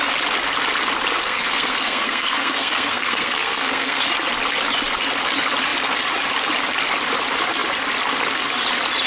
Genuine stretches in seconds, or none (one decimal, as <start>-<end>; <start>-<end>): 0.0-1.2; 4.1-9.1